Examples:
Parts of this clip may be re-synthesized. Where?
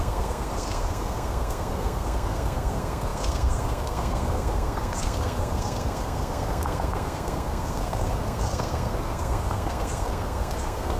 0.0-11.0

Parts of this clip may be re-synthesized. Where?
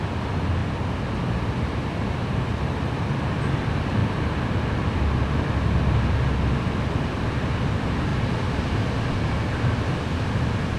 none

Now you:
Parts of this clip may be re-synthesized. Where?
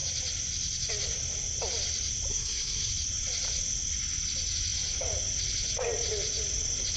2.3-2.9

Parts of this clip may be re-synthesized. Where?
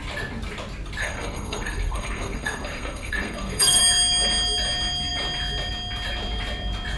1.0-3.8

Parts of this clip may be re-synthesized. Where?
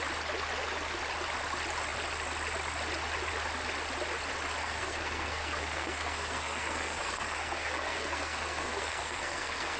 4.6-9.8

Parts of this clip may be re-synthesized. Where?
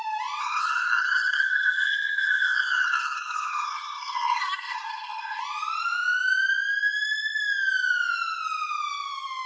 0.4-5.4